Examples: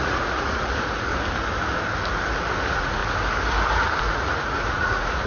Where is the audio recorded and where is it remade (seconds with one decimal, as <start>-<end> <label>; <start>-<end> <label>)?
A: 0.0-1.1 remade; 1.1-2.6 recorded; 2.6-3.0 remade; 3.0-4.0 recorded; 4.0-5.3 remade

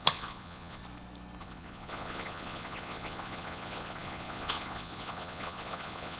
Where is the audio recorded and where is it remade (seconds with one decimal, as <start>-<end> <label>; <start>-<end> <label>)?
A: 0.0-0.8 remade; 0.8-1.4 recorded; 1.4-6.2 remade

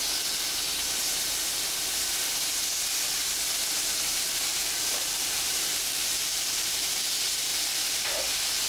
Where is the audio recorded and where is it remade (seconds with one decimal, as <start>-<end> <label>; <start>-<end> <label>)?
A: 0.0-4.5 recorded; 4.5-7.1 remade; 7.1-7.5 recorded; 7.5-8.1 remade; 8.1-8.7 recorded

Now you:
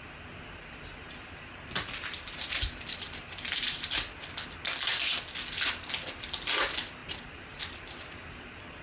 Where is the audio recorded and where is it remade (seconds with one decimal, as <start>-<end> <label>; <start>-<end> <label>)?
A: 0.0-1.0 recorded; 1.0-3.9 remade; 3.9-7.0 recorded; 7.0-8.1 remade; 8.1-8.8 recorded

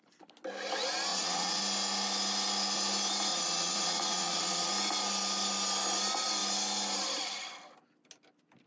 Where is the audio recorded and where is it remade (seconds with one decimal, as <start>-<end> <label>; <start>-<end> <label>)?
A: 0.0-1.1 recorded; 1.1-1.6 remade; 1.6-3.3 recorded; 3.3-4.7 remade; 4.7-8.7 recorded

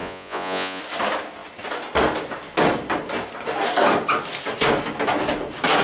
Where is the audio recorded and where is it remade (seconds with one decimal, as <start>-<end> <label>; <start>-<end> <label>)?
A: 0.0-0.8 remade; 0.8-5.8 recorded

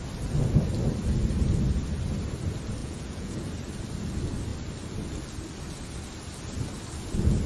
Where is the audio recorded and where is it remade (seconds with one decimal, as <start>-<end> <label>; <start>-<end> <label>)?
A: 0.0-2.8 recorded; 2.8-3.5 remade; 3.5-7.5 recorded

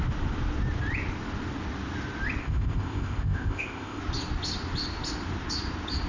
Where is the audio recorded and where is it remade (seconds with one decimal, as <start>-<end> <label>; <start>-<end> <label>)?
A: 0.0-2.4 recorded; 2.4-4.0 remade; 4.0-6.1 recorded